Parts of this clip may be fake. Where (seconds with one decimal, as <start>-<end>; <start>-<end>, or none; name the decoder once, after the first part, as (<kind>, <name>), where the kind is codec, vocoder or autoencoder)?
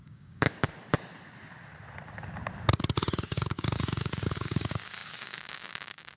0.0-0.7 (codec, DAC); 3.2-6.2